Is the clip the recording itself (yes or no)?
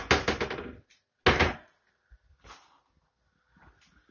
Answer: yes